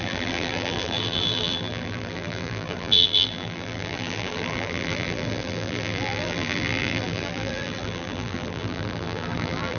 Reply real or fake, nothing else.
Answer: fake